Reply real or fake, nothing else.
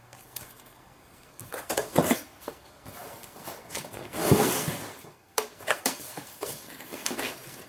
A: fake